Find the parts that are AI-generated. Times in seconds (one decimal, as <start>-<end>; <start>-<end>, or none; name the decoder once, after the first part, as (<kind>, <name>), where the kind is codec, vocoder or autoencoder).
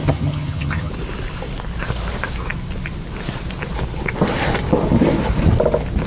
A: 0.0-0.9 (vocoder, HiFi-GAN)